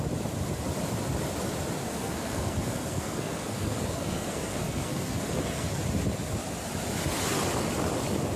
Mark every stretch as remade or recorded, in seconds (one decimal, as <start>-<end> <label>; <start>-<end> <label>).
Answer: 0.0-1.9 recorded; 1.9-5.8 remade; 5.8-8.4 recorded